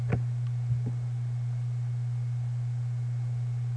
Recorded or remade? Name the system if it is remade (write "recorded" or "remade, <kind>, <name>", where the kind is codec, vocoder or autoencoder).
recorded